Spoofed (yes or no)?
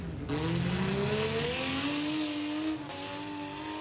no